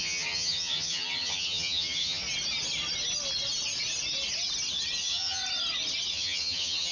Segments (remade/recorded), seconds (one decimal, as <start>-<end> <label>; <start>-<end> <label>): 0.0-2.2 remade; 2.2-5.0 recorded; 5.0-5.4 remade; 5.4-6.1 recorded; 6.1-6.9 remade